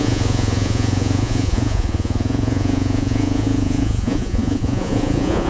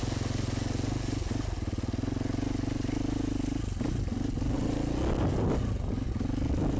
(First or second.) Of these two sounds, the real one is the second